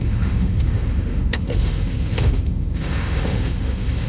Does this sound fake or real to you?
fake